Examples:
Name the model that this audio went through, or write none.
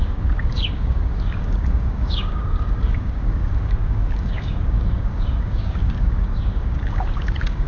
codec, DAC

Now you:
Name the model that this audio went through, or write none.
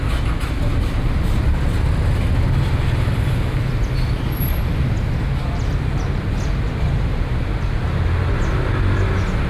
none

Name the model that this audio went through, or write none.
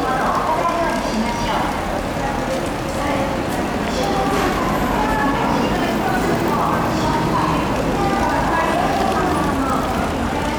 none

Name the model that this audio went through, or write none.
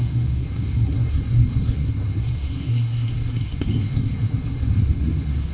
codec, SNAC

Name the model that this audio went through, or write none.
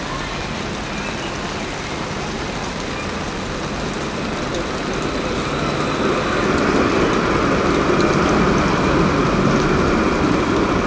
none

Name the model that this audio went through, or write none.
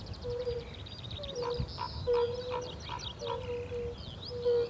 none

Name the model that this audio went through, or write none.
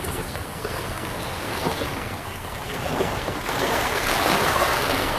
codec, SNAC